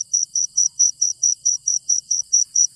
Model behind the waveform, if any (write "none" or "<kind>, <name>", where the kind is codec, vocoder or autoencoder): vocoder, Vocos